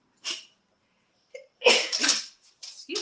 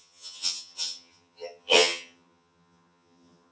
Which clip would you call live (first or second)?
first